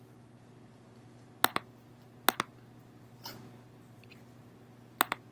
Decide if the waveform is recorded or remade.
recorded